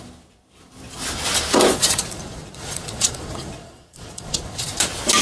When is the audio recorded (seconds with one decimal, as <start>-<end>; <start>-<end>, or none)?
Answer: 0.0-1.7; 4.8-5.2